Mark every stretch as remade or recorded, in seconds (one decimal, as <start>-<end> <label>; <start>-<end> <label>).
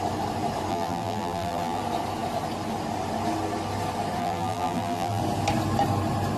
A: 0.0-0.7 recorded; 0.7-1.8 remade; 1.8-4.2 recorded; 4.2-5.2 remade; 5.2-6.4 recorded